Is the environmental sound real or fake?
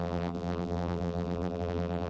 fake